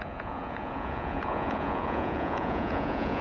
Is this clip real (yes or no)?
no